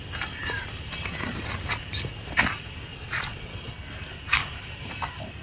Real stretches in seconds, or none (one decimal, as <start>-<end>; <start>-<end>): 0.0-2.9; 3.7-5.4